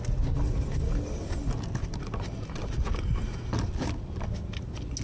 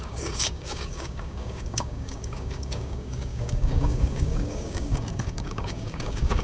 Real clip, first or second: first